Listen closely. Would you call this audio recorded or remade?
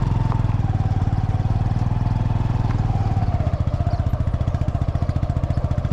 recorded